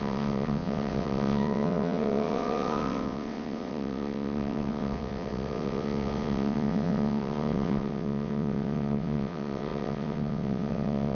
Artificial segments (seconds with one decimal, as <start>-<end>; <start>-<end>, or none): 0.0-11.1